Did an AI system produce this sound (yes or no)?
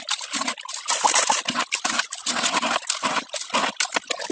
no